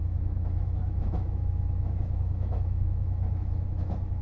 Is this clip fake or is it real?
fake